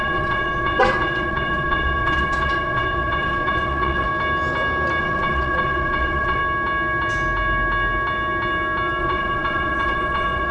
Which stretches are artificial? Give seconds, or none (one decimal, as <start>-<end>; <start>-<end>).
0.0-4.1; 5.0-6.4; 9.0-10.5